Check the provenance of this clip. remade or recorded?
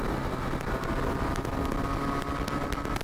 recorded